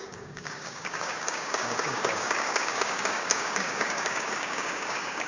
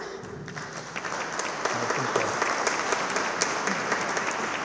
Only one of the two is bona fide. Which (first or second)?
second